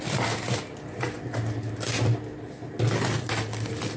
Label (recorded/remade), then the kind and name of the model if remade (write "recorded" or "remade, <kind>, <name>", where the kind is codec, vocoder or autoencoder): recorded